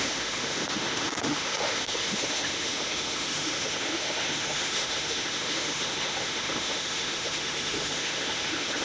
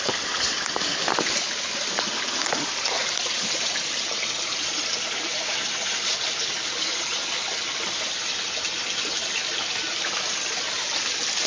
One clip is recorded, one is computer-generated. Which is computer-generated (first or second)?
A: first